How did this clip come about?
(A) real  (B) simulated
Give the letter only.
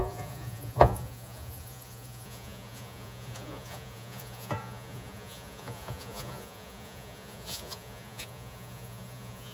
B